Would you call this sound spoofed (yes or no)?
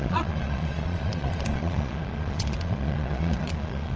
yes